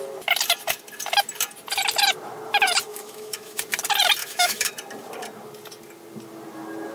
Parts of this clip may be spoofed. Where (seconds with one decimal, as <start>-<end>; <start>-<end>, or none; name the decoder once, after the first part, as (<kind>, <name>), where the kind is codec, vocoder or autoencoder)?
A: 2.9-3.6 (autoencoder, DAC-VAE); 4.2-4.7